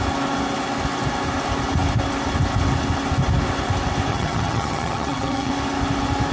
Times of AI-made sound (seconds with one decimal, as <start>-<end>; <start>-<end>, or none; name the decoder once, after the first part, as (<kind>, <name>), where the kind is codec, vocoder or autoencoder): 4.1-5.5 (vocoder, HiFi-GAN)